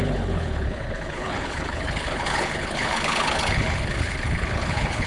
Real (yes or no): no